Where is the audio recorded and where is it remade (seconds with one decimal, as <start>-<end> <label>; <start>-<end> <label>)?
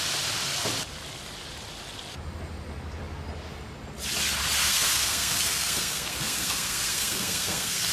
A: 0.0-4.6 recorded; 4.6-7.9 remade